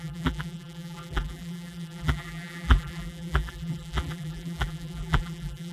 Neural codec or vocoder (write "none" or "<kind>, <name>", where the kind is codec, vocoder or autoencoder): vocoder, BigVGAN v2